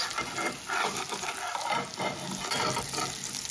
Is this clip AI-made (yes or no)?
no